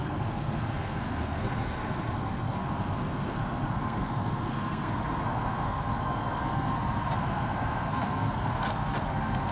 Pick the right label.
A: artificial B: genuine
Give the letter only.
A